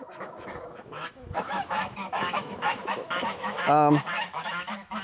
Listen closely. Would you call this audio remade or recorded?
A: remade